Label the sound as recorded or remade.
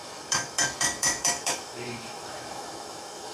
remade